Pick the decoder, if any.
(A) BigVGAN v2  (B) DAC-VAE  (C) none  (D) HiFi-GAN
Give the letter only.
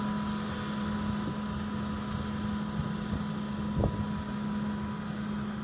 C